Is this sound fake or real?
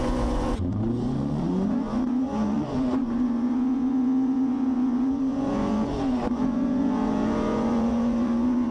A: fake